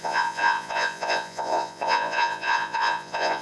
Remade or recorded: remade